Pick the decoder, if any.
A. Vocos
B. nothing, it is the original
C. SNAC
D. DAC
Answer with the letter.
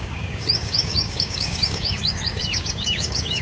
D